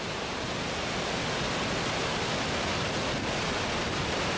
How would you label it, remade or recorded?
recorded